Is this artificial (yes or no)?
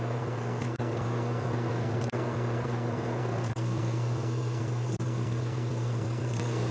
yes